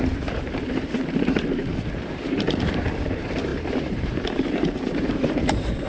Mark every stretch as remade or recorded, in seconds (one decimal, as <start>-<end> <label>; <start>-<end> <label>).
0.0-5.9 remade